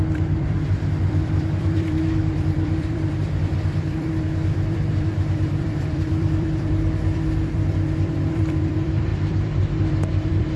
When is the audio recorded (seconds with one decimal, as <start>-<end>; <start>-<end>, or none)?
none